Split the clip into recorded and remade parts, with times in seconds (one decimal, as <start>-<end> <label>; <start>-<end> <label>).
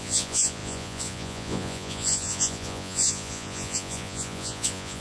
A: 0.0-5.0 remade